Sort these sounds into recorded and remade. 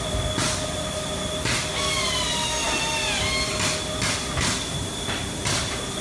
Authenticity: recorded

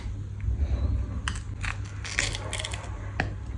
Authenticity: recorded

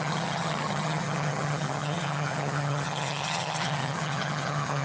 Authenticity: remade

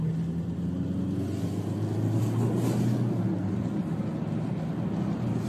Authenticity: recorded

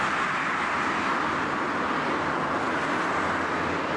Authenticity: recorded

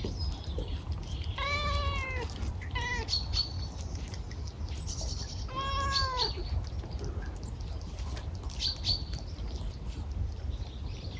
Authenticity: recorded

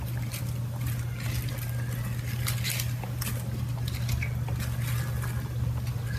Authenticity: recorded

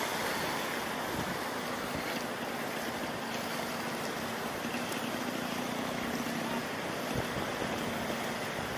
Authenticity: recorded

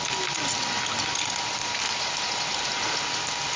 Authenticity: recorded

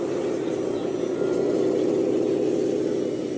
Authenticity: recorded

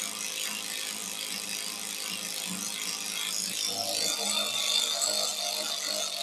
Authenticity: recorded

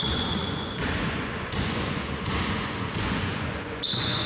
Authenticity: remade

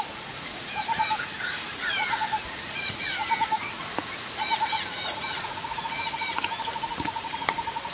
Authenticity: remade